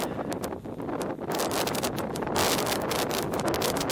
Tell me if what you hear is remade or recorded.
recorded